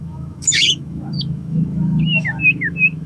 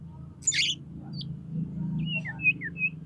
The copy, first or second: first